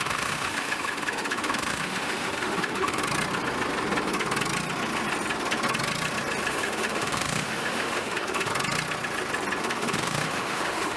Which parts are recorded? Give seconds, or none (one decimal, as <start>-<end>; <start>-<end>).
3.0-6.5; 8.5-9.6